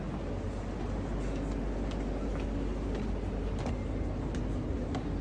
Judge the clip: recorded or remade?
recorded